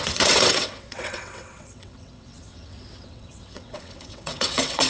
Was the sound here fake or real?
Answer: fake